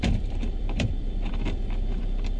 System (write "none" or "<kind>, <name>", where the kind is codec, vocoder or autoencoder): vocoder, BigVGAN v2